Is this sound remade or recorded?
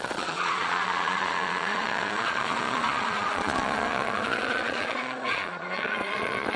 remade